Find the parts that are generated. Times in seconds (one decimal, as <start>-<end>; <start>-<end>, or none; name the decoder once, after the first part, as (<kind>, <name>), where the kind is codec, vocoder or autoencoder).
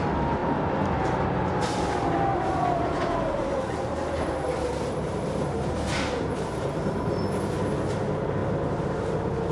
2.3-7.5 (vocoder, BigVGAN v2)